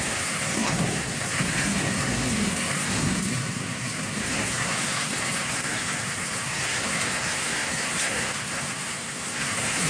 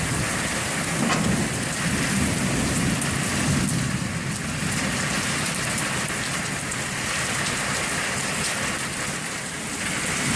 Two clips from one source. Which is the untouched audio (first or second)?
second